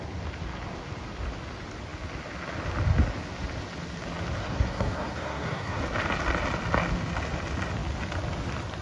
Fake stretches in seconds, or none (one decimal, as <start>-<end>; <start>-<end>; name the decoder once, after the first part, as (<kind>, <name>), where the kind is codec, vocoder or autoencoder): 4.4-5.8 (codec, SNAC)

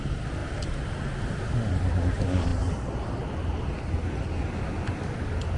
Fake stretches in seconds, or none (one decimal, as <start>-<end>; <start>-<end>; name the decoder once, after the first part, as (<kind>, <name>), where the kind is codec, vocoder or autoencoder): none

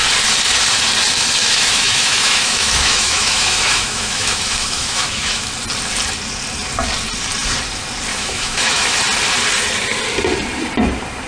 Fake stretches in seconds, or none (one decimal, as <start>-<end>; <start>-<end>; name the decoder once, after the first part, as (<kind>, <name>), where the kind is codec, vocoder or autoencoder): 1.4-5.5 (autoencoder, DAC-VAE); 8.1-9.0

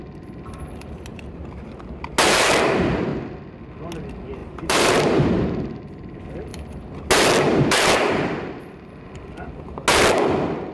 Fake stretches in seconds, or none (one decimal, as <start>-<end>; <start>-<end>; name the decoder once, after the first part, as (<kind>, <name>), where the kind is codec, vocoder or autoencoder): 1.1-1.6 (vocoder, BigVGAN v2); 4.4-5.8